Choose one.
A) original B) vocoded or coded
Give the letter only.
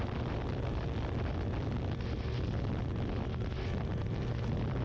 A